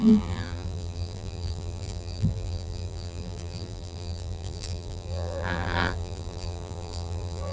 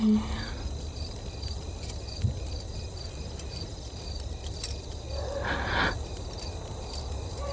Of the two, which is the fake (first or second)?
first